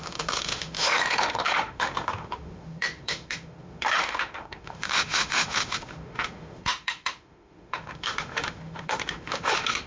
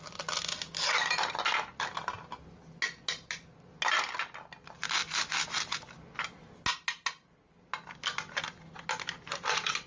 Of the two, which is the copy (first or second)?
first